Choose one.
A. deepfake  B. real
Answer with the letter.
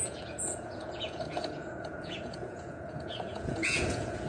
A